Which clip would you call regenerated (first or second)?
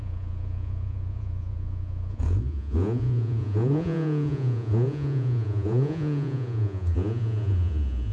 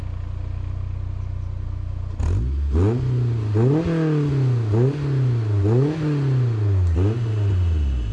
first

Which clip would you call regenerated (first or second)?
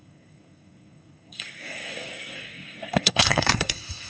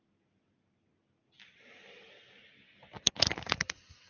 first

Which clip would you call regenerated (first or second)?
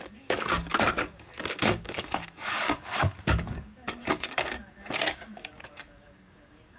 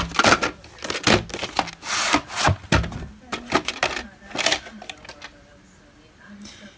first